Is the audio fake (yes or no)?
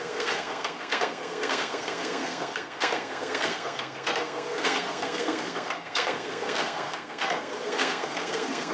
yes